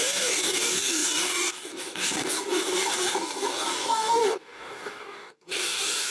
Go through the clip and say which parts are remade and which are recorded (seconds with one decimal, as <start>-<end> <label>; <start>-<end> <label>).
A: 0.0-6.1 remade